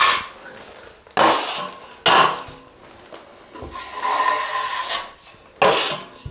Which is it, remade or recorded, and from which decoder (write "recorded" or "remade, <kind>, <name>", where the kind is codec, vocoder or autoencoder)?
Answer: recorded